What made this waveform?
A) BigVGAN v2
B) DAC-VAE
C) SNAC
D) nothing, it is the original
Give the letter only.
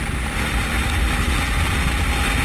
D